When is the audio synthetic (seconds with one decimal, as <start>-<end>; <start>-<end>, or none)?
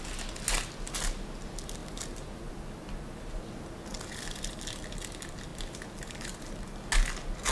none